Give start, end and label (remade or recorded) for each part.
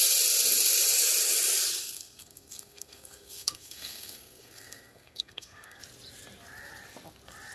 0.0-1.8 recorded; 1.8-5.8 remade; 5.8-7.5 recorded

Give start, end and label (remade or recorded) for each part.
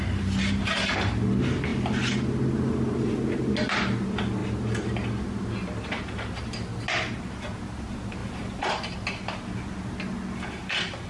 0.0-11.1 recorded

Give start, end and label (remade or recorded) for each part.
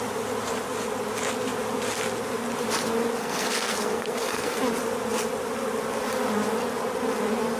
0.0-3.2 recorded; 3.2-4.6 remade; 4.6-7.6 recorded